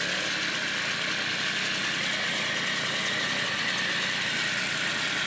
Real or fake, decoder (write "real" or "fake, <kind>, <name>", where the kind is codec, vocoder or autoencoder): real